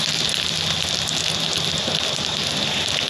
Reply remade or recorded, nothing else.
recorded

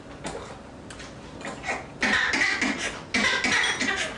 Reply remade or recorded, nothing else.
recorded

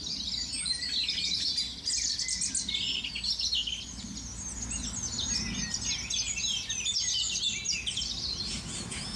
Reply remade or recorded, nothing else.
recorded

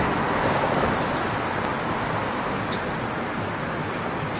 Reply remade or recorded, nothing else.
recorded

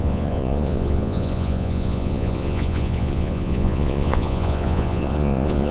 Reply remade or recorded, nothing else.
remade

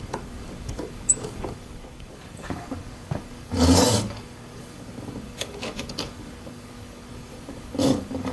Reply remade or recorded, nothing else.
remade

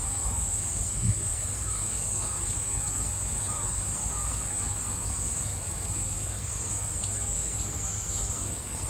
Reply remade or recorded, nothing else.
remade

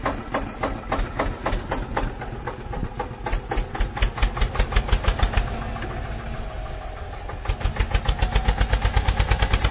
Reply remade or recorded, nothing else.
recorded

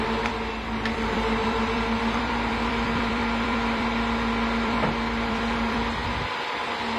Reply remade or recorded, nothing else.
remade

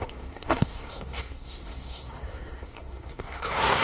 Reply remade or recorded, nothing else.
remade